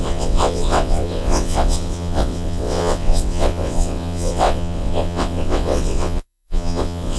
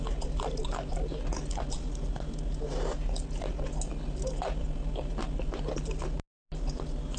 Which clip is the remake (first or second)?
first